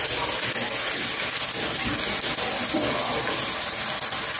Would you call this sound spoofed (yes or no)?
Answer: no